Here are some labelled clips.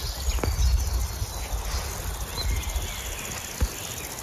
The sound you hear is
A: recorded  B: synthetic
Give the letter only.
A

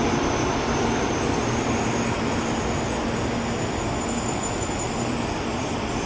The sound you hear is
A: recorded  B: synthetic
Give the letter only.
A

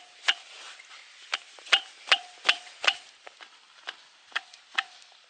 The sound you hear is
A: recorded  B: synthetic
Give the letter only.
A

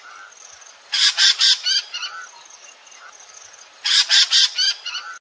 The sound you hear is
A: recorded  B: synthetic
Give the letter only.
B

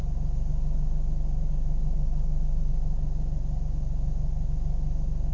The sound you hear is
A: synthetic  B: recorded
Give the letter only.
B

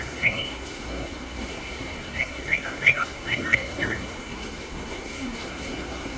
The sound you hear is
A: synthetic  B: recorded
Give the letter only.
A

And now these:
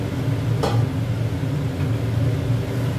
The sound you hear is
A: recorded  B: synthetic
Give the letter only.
A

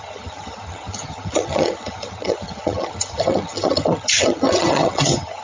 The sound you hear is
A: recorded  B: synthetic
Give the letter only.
B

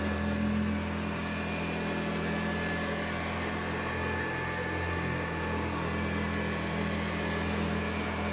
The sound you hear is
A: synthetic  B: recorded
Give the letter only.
B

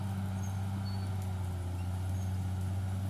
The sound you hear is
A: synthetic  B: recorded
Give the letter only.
B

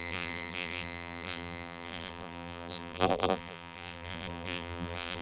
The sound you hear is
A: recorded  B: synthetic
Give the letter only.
B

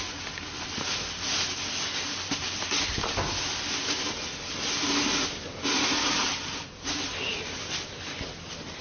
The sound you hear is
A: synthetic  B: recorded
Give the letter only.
B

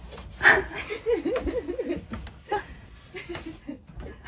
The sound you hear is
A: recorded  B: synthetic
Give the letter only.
A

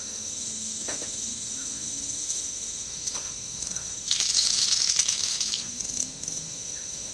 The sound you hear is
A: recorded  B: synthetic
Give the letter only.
B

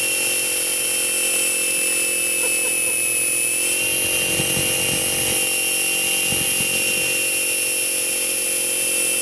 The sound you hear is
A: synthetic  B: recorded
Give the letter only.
B